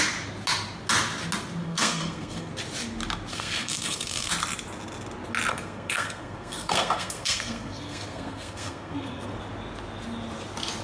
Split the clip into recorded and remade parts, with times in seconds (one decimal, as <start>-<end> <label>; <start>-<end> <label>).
0.0-1.6 recorded; 1.6-2.5 remade; 2.5-3.3 recorded; 3.3-4.3 remade; 4.3-5.5 recorded; 5.5-9.4 remade; 9.4-10.8 recorded